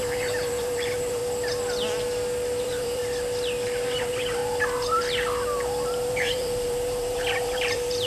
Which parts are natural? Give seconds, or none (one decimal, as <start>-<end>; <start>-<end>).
1.2-2.6; 3.0-4.0; 4.4-6.1